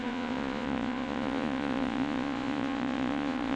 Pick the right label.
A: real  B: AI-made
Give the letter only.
B